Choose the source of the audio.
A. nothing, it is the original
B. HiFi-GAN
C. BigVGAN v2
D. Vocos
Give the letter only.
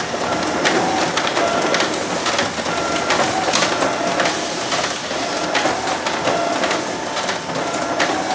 A